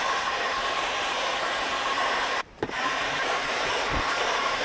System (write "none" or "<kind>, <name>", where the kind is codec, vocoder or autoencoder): vocoder, BigVGAN v2